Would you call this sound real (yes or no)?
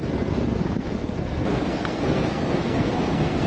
no